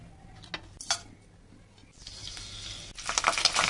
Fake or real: real